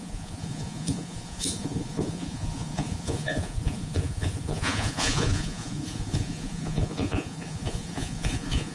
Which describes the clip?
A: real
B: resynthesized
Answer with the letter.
B